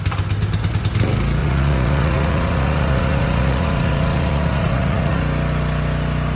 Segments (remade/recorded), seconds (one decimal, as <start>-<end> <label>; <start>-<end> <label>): 0.0-1.4 recorded; 1.4-5.2 remade; 5.2-6.4 recorded